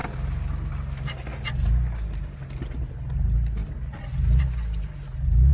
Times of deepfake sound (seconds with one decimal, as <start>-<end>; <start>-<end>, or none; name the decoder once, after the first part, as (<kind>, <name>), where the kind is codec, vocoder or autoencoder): none